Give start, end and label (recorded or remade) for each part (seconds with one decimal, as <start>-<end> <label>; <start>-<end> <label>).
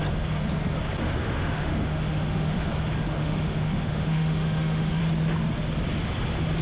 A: 0.0-1.0 recorded; 1.0-2.7 remade; 2.7-3.2 recorded; 3.2-5.0 remade; 5.0-6.6 recorded